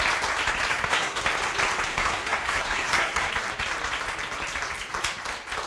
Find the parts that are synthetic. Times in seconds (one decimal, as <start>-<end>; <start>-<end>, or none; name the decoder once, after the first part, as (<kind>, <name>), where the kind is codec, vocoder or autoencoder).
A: 0.7-1.2 (codec, SNAC); 1.9-3.3